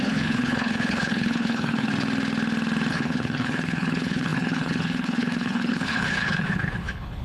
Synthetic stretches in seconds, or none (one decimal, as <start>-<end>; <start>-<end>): 0.0-1.9; 2.9-7.2